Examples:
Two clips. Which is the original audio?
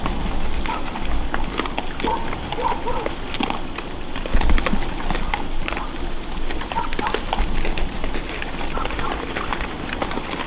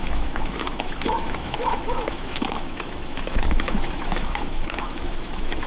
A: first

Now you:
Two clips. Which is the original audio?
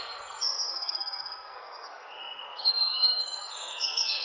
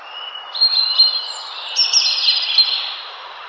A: second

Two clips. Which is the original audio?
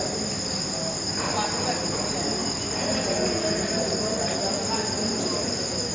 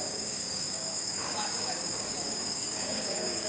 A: first